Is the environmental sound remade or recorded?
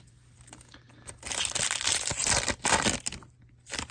recorded